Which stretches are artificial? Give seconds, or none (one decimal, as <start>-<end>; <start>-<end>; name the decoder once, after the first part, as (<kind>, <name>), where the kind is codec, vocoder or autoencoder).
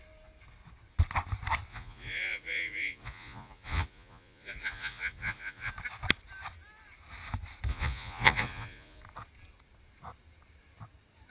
1.7-5.7 (vocoder, Vocos); 7.7-9.0